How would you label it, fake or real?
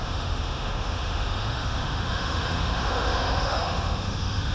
fake